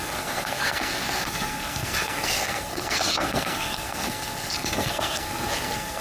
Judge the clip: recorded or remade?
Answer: remade